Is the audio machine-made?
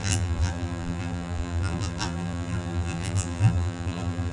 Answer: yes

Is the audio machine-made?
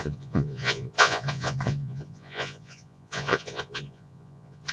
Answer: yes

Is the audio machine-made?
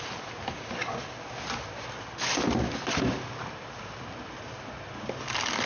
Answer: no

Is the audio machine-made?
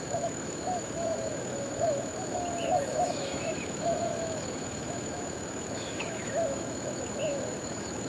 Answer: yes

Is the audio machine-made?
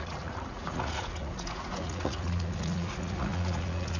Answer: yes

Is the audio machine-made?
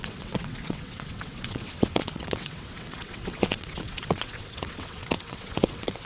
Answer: yes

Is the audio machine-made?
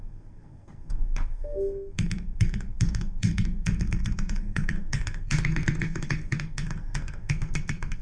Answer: yes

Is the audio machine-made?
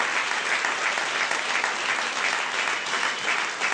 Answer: no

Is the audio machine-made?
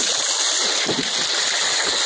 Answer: no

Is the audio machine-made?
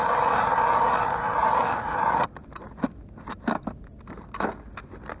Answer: no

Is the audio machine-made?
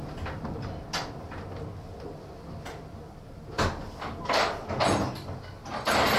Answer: no